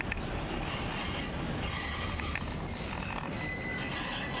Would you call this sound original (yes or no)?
yes